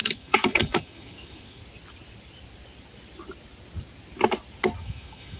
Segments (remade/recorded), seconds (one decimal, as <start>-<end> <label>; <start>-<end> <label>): 0.0-1.6 remade; 1.6-4.8 recorded; 4.8-5.4 remade